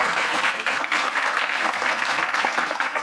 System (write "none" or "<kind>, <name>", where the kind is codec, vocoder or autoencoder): codec, SNAC